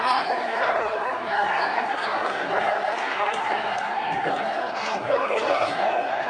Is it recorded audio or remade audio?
remade